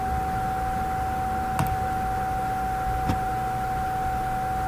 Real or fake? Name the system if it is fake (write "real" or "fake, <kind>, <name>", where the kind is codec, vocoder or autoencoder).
real